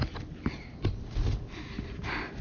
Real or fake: real